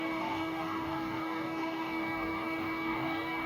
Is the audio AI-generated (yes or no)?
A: yes